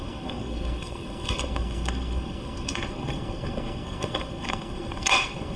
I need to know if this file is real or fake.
fake